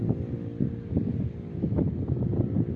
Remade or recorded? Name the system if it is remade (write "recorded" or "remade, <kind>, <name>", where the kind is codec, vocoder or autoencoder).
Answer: recorded